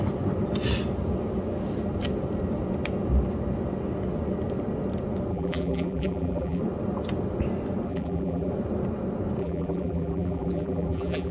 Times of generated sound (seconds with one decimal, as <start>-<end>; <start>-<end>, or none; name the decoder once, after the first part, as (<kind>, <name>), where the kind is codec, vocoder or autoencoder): 5.3-6.6 (vocoder, BigVGAN v2); 7.9-8.5; 9.4-11.3